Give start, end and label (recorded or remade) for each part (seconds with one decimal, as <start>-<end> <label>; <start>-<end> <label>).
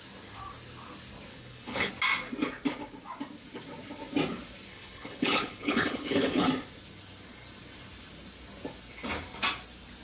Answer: 0.0-1.3 recorded; 1.3-1.9 remade; 1.9-4.7 recorded; 4.7-6.5 remade; 6.5-10.0 recorded